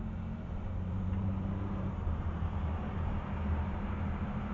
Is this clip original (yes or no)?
no